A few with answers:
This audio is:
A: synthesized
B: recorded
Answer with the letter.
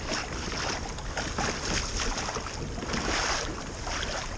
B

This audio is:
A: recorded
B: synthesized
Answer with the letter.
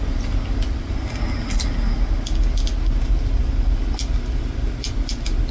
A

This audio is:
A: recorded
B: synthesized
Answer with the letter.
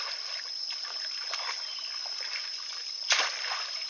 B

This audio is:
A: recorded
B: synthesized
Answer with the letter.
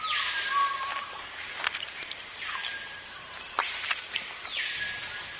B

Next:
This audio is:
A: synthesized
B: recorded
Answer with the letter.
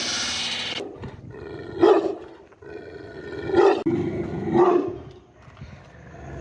B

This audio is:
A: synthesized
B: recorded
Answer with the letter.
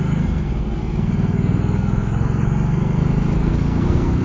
A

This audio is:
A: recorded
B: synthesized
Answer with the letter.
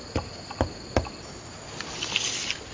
A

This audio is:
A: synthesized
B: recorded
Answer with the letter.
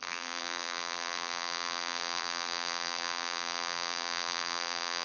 A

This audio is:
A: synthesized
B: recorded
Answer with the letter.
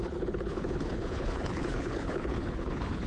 A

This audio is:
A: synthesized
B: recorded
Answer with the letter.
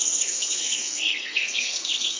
A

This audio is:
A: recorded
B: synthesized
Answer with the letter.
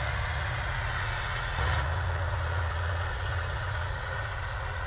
B